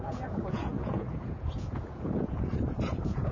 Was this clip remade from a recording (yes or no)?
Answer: yes